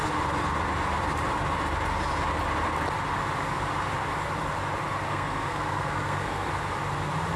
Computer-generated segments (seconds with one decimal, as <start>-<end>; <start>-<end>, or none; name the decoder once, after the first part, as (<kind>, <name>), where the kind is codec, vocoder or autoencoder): 5.1-6.5 (codec, SNAC)